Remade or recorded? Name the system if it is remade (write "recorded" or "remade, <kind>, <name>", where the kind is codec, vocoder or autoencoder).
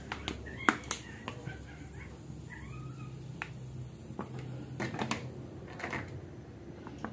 recorded